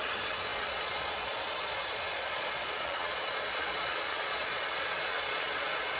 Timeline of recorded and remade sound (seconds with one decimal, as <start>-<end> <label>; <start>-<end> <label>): 0.0-6.0 remade